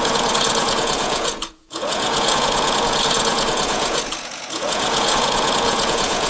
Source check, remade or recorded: remade